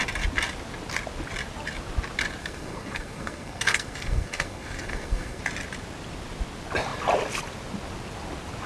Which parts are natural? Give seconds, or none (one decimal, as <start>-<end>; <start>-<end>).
0.0-2.4; 5.4-8.7